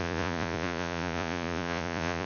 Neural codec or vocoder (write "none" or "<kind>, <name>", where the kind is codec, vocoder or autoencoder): vocoder, Vocos